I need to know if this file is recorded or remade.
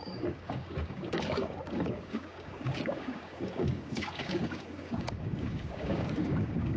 remade